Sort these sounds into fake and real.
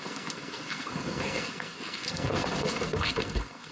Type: fake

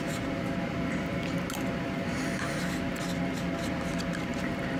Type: real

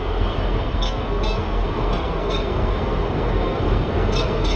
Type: fake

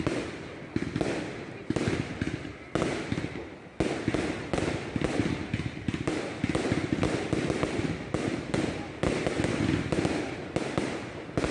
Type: real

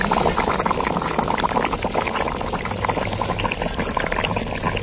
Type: real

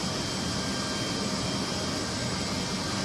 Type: real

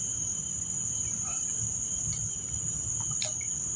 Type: real